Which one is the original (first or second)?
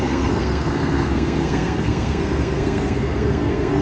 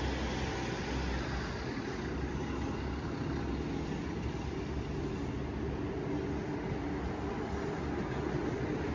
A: second